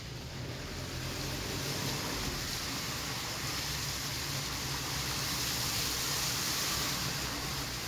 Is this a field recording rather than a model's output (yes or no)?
yes